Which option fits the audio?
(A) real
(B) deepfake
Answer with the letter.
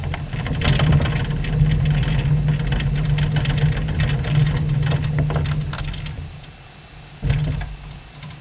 A